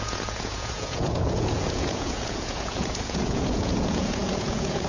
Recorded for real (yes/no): no